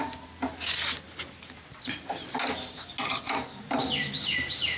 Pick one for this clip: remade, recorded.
recorded